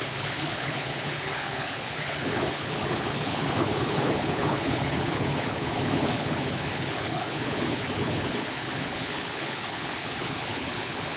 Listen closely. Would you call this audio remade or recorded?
remade